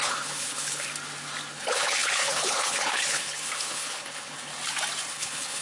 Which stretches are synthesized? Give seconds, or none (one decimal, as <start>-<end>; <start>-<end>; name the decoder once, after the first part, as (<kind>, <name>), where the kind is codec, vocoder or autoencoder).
0.0-0.9 (codec, HILCodec); 1.5-4.5; 5.1-5.6